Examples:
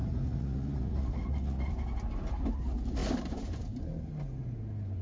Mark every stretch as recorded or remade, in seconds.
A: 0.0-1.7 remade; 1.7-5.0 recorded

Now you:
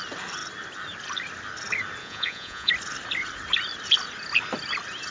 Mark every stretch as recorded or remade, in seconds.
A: 0.0-2.0 recorded; 2.0-2.7 remade; 2.7-5.1 recorded

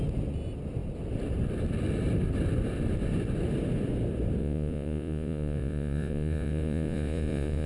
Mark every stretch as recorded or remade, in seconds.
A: 0.0-4.4 recorded; 4.4-7.7 remade

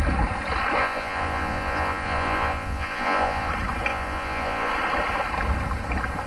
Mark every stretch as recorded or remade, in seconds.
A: 0.0-0.8 recorded; 0.8-3.5 remade; 3.5-3.9 recorded; 3.9-4.7 remade; 4.7-6.3 recorded

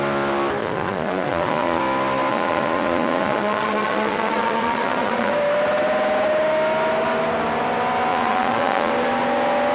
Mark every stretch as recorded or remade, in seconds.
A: 0.0-0.6 recorded; 0.6-1.8 remade; 1.8-2.3 recorded; 2.3-5.3 remade; 5.3-8.1 recorded; 8.1-8.9 remade; 8.9-9.7 recorded

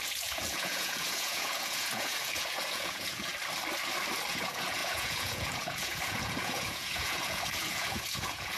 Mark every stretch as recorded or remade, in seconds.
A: 0.0-3.3 remade; 3.3-4.3 recorded; 4.3-8.6 remade